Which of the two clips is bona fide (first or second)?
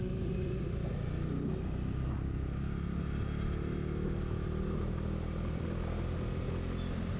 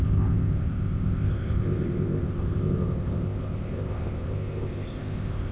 first